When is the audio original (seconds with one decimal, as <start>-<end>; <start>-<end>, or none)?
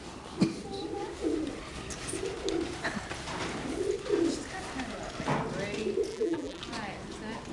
0.0-6.1; 6.6-7.5